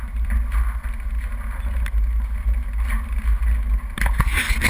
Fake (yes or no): no